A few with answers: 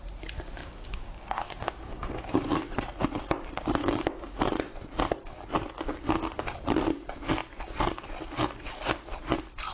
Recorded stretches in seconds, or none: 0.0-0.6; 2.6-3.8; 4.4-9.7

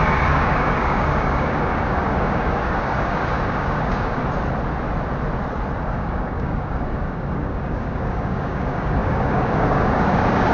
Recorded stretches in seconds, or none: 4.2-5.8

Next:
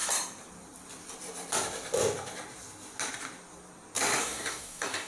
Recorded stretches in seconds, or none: 0.0-4.2

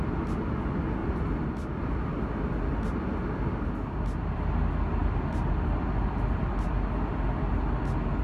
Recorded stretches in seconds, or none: 0.0-8.2

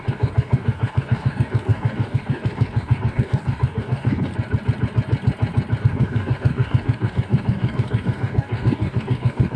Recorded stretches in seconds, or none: 4.3-5.8